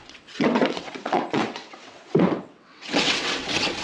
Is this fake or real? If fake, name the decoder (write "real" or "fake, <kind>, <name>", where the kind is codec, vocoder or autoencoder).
fake, vocoder, WaveNeXt